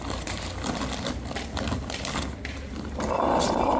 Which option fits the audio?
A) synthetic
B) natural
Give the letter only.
B